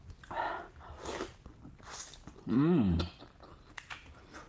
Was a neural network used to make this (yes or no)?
no